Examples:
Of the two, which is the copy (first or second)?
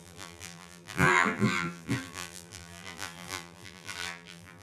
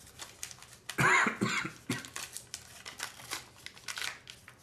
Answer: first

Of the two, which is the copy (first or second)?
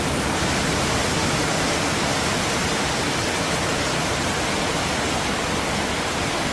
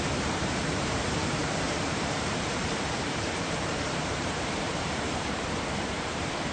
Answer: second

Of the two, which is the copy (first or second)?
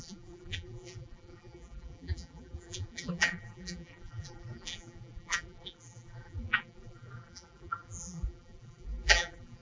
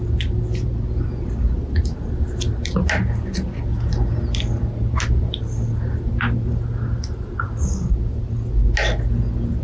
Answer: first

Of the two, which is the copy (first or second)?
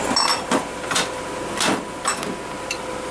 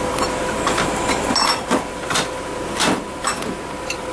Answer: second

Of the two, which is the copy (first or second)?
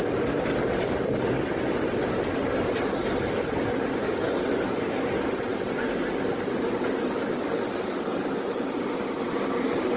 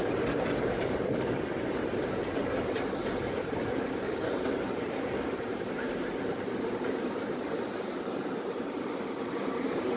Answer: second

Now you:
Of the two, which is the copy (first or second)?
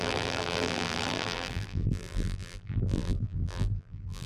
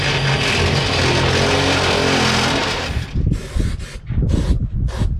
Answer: first